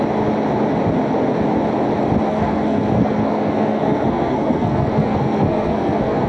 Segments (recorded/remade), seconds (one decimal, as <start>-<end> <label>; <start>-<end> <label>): 0.0-2.3 recorded; 2.3-6.3 remade